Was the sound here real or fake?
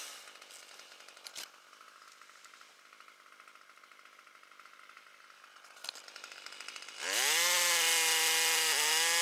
real